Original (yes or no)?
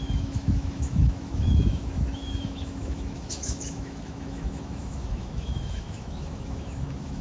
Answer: no